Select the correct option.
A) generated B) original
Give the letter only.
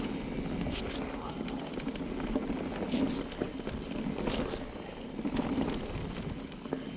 B